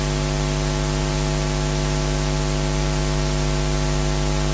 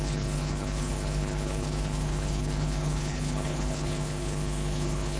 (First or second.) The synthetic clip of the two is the second